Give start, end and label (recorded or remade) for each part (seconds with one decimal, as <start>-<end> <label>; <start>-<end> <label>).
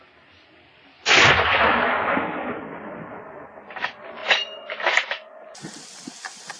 0.0-6.6 recorded